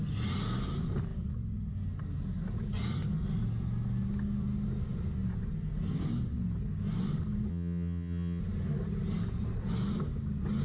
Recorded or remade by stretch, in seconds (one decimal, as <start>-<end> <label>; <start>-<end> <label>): 0.0-7.5 recorded; 7.5-8.4 remade; 8.4-10.6 recorded